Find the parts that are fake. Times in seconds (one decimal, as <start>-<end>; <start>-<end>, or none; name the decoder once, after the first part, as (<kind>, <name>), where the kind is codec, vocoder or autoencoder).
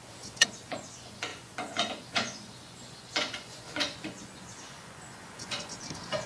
0.0-6.3 (vocoder, Vocos)